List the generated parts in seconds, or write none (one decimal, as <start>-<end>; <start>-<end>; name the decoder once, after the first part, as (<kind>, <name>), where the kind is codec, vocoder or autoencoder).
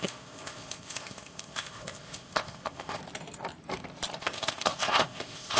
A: 0.0-3.0 (codec, ZipCodec); 4.2-5.6